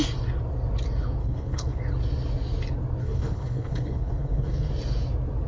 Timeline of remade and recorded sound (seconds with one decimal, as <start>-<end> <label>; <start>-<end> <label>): 0.0-1.2 recorded; 1.2-1.8 remade; 1.8-3.0 recorded; 3.0-4.7 remade; 4.7-5.5 recorded